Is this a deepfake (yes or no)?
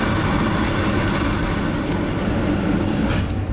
no